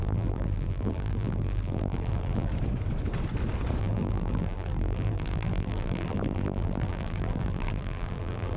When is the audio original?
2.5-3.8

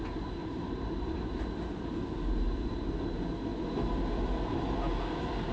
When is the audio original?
0.0-0.4; 1.1-5.5

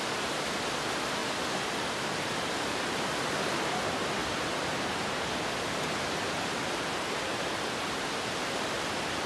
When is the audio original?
0.0-4.2; 6.5-9.3

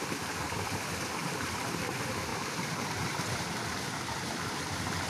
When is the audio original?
0.0-1.2; 1.8-2.3; 3.5-5.1

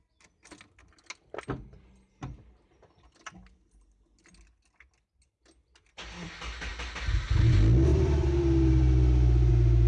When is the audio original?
0.0-7.9; 9.5-9.9

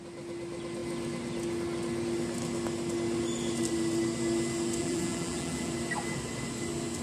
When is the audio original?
0.0-4.8; 5.7-7.0

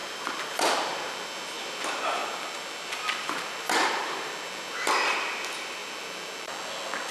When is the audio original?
1.3-2.2; 4.6-5.8; 6.6-7.1

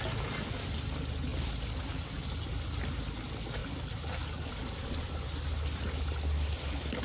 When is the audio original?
0.0-1.3; 2.5-3.6; 5.1-7.0